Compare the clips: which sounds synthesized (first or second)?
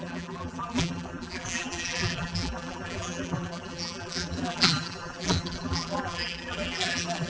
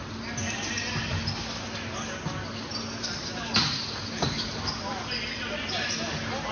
first